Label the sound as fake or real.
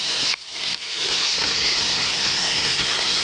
fake